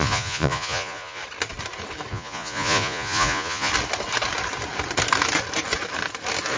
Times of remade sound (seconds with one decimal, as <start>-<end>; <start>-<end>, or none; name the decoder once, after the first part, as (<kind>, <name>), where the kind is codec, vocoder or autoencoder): 0.0-1.2 (vocoder, Vocos); 2.1-3.7